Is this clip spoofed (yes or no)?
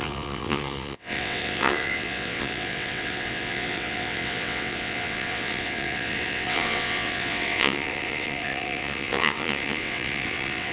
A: yes